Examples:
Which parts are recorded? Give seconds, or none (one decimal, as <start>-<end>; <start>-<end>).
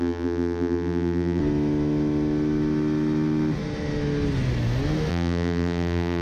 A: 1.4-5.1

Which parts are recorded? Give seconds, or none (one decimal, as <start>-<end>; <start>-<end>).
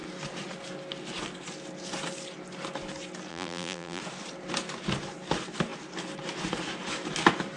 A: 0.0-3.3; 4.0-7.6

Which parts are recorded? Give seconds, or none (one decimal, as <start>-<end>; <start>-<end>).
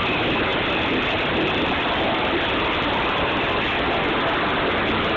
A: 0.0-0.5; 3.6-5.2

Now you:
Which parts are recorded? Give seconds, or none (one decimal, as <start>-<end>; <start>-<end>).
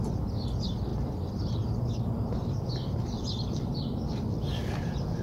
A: 0.0-5.2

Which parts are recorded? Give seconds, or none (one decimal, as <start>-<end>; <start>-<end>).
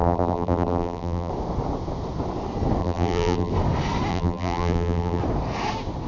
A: 1.3-2.8; 3.5-4.1; 5.2-6.1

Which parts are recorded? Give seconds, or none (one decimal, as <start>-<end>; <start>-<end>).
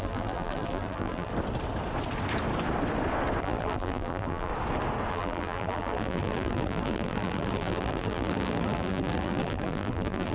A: 1.3-3.4; 4.5-5.1